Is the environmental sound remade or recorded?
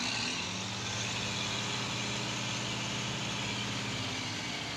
recorded